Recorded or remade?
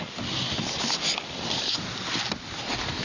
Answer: recorded